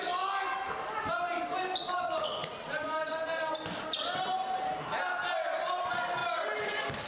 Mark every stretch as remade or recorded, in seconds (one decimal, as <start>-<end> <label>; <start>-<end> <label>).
0.0-7.1 recorded